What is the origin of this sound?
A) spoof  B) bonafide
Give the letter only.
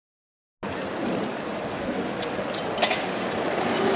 B